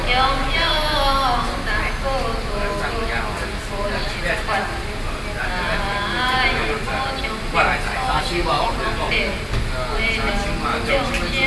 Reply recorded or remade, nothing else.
recorded